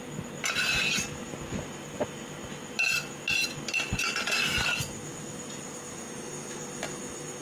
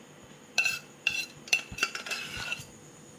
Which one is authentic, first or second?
first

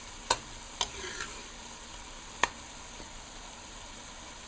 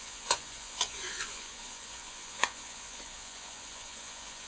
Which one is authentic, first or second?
first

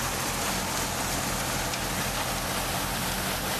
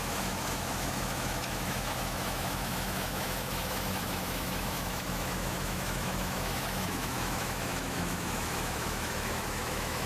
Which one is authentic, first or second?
first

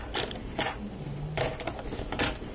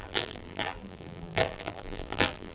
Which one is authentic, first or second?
first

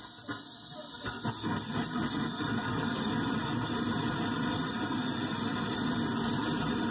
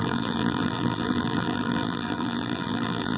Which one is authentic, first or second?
first